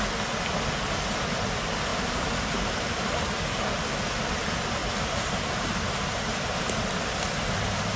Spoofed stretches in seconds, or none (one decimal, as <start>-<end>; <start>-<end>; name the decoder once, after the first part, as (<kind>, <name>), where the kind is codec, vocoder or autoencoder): 1.9-3.3 (vocoder, BigVGAN v2); 4.8-6.6